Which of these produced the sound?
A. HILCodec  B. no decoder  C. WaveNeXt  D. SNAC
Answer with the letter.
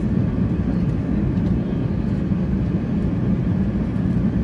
B